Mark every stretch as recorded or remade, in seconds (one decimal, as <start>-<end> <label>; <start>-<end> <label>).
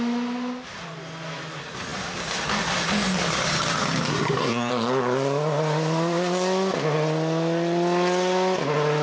0.0-4.1 recorded; 4.1-4.7 remade; 4.7-9.0 recorded